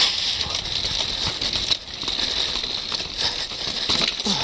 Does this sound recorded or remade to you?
recorded